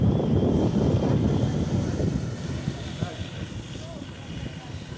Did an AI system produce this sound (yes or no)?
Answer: yes